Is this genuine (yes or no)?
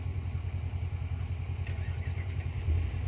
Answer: yes